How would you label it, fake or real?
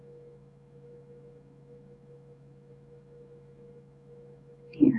fake